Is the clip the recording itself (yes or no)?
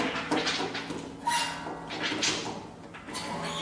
yes